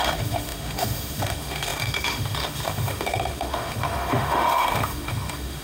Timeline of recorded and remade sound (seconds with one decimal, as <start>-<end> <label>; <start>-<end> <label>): 0.0-5.6 remade